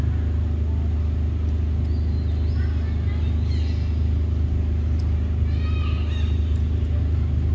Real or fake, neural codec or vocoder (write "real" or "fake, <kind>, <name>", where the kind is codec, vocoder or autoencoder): real